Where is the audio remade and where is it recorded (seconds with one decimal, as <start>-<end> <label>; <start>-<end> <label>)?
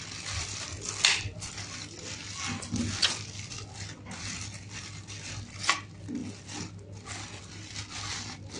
0.0-8.6 recorded